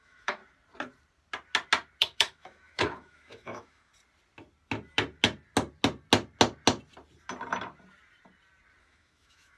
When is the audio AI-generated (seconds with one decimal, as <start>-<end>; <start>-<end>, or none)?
0.0-0.4; 2.0-3.9; 8.8-9.6